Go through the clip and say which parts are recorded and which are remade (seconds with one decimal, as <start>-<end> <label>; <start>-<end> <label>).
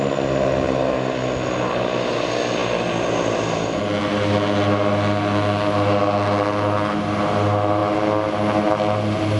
0.0-9.4 recorded